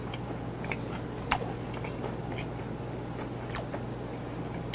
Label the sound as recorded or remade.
recorded